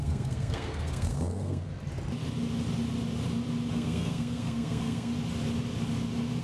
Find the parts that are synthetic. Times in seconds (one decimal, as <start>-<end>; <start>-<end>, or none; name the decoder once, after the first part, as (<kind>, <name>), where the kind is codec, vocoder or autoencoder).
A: 0.0-1.7 (codec, SNAC); 3.7-5.1